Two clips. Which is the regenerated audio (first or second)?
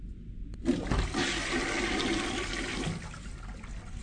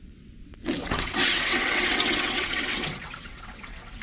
second